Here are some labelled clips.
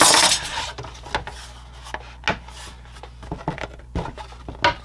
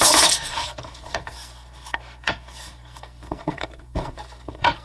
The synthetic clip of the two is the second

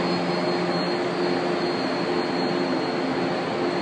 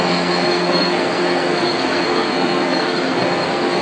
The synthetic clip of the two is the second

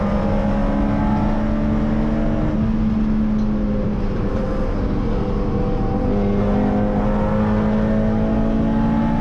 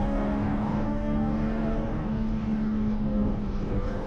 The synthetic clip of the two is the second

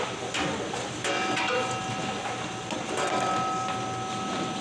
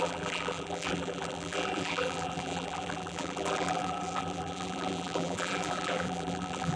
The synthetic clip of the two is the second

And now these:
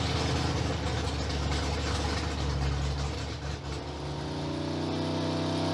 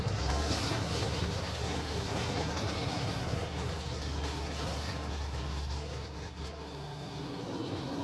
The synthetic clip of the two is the second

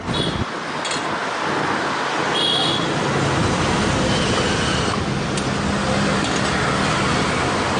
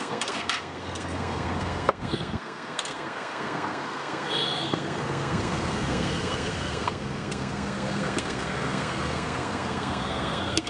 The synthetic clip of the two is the second